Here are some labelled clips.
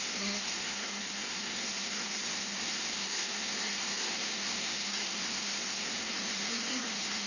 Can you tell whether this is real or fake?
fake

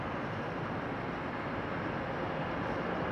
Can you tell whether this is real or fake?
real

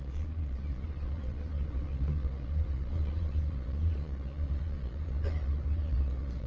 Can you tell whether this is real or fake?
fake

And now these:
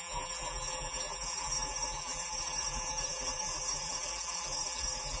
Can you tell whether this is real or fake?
fake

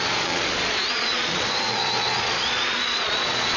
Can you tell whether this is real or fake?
fake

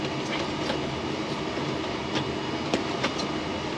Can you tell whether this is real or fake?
real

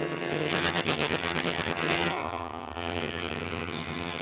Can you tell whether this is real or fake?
fake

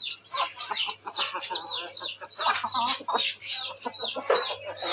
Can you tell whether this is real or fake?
real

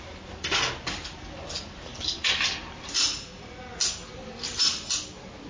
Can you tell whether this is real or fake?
real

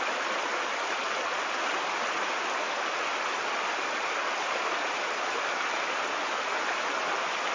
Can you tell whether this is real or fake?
real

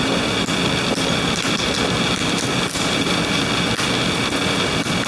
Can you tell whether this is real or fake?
real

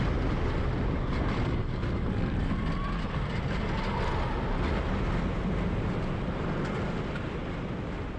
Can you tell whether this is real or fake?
real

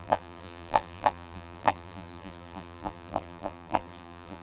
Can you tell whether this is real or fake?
fake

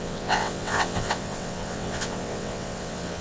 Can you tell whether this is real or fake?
fake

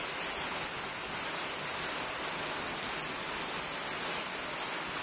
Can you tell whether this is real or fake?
real